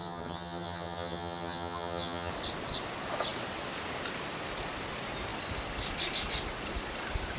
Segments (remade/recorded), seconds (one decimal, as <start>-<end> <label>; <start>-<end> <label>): 0.0-2.3 remade; 2.3-7.4 recorded